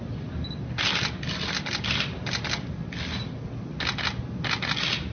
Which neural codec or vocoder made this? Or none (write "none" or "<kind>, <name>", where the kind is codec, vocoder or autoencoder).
none